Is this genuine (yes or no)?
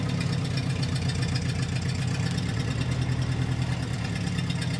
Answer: yes